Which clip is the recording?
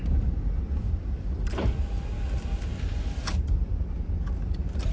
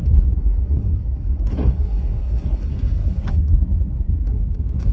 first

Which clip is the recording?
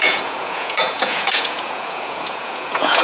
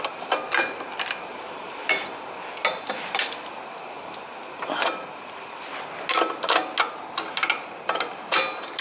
second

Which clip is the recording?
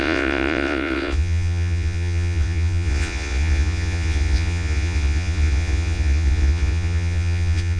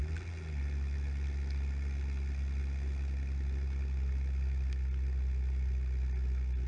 second